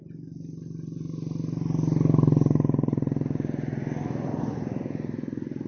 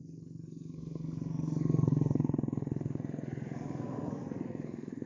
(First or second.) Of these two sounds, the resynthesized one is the second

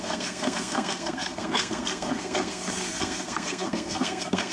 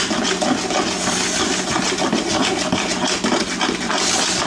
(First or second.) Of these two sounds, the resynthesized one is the first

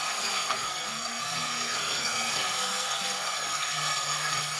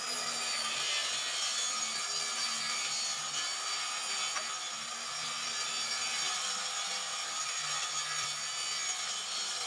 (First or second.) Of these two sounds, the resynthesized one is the first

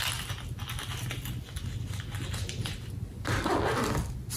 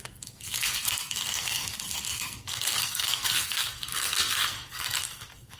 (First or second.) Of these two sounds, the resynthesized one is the second